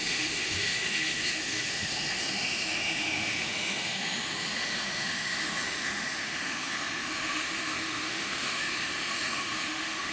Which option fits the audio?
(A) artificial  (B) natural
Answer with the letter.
A